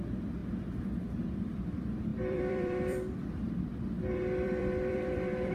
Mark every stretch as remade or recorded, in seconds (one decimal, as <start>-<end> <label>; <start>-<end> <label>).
0.0-0.4 remade; 0.4-1.0 recorded; 1.0-5.5 remade